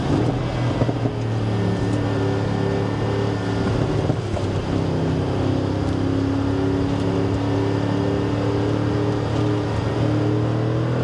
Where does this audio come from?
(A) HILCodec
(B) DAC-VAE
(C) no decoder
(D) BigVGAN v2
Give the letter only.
C